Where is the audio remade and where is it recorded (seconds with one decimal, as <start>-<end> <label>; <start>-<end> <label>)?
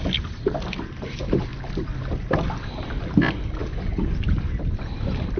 0.0-5.4 recorded